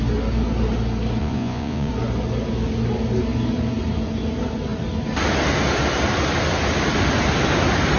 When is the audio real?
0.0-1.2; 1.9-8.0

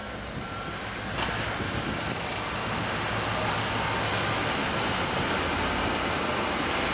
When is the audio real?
0.0-6.9

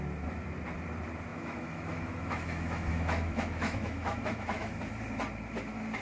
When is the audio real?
0.0-1.3; 4.8-6.0